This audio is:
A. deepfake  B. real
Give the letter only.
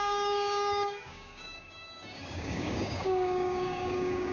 A